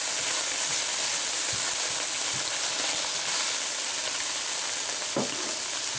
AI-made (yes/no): no